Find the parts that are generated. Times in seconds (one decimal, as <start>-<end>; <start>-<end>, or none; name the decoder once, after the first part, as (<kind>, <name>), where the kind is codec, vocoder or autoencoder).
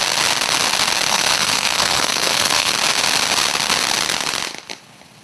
1.1-2.7 (codec, SNAC)